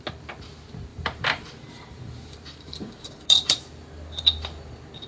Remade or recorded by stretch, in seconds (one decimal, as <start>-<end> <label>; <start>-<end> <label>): 0.0-0.9 recorded; 0.9-3.6 remade; 3.6-5.1 recorded